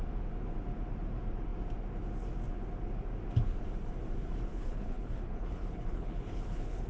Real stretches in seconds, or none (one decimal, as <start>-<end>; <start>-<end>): 0.0-4.5